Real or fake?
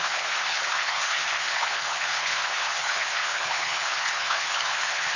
fake